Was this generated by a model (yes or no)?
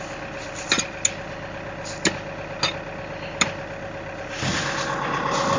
no